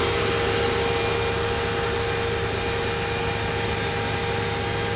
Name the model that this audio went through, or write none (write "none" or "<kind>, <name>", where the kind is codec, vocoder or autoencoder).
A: none